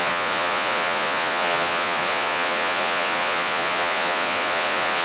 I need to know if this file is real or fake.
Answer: fake